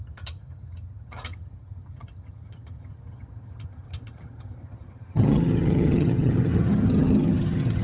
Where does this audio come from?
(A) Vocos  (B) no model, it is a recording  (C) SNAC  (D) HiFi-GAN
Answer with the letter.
D